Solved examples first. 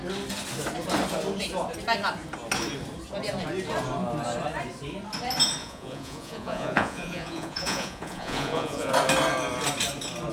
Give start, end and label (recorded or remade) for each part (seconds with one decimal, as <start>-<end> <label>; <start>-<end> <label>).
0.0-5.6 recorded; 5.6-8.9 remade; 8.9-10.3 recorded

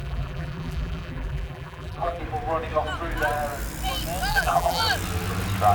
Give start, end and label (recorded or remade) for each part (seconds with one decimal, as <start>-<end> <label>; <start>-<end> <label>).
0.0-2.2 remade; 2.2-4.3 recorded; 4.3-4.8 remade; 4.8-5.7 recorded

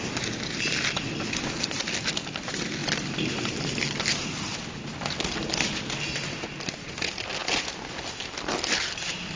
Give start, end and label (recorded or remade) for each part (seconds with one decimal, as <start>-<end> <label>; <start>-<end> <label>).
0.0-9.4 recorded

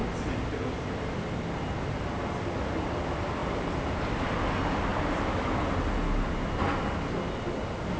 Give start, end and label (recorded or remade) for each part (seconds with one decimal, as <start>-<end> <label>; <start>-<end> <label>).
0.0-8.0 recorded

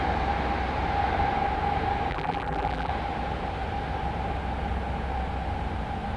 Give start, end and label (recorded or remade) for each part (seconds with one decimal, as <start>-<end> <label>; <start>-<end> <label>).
0.0-2.1 recorded; 2.1-2.9 remade; 2.9-6.2 recorded

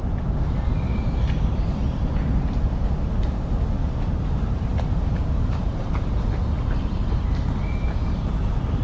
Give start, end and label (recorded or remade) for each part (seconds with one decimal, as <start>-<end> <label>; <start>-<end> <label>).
0.0-8.8 recorded